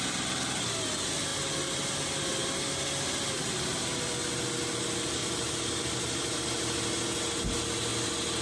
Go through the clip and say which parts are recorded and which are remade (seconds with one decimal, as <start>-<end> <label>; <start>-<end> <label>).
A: 0.0-5.2 recorded; 5.2-6.4 remade; 6.4-8.4 recorded